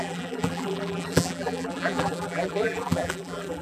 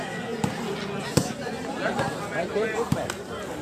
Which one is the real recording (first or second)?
second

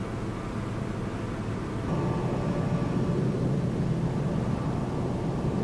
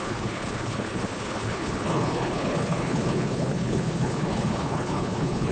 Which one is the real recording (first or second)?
first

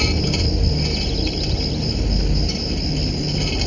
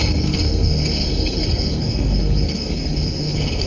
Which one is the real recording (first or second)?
first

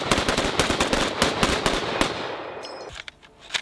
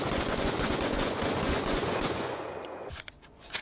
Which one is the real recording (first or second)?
first